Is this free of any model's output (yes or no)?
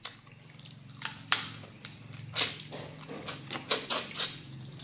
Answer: no